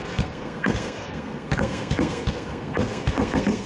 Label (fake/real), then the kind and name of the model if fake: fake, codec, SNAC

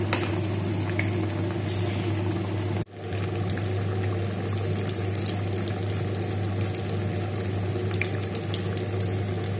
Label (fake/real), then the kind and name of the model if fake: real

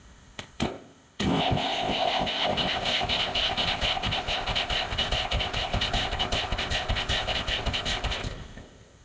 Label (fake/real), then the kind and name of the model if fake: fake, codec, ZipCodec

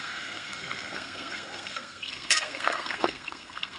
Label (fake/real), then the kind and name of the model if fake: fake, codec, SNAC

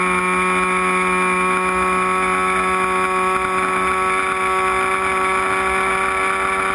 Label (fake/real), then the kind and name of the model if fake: real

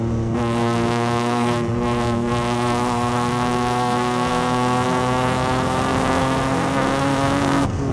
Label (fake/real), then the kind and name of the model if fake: fake, codec, SNAC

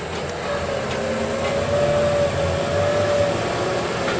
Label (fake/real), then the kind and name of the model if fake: real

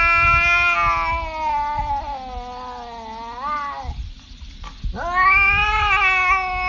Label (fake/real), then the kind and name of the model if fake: real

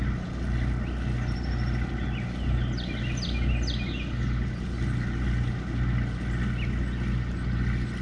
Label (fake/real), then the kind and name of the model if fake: real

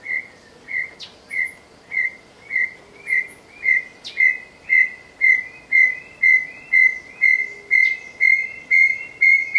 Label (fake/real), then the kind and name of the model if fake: real